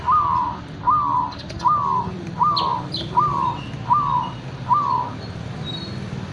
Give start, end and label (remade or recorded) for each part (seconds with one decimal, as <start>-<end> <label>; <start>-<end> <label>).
0.0-6.3 recorded